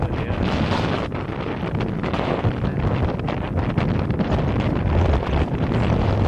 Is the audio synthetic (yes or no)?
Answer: no